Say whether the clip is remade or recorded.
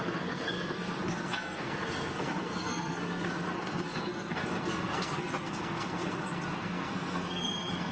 remade